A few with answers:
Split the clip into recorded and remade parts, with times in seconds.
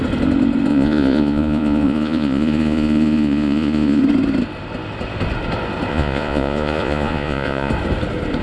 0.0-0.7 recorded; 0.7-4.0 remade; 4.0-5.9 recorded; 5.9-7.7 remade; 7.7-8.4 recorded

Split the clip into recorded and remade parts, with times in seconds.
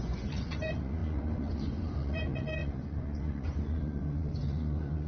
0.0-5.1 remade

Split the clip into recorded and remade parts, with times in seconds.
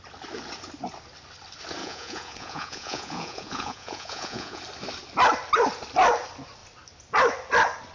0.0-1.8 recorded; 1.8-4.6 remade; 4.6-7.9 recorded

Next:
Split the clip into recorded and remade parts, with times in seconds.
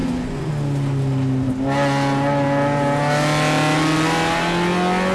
0.0-0.5 remade; 0.5-5.1 recorded